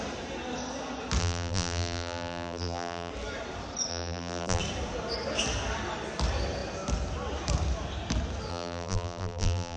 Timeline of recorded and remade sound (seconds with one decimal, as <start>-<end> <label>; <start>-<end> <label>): 0.0-1.2 recorded; 1.2-3.1 remade; 3.1-3.9 recorded; 3.9-4.6 remade; 4.6-8.5 recorded; 8.5-9.8 remade